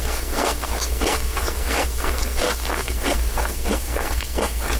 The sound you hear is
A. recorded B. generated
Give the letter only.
B